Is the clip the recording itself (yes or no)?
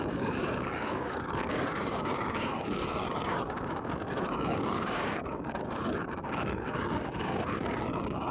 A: no